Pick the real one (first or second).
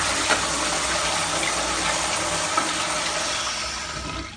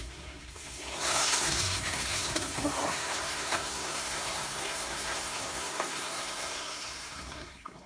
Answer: first